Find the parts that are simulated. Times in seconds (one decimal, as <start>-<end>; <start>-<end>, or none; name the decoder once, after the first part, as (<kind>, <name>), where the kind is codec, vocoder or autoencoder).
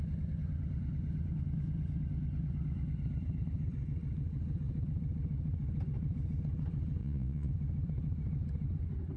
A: 7.0-7.5 (vocoder, Vocos)